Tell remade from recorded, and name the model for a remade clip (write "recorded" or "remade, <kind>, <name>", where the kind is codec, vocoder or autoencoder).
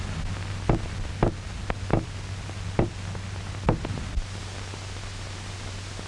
recorded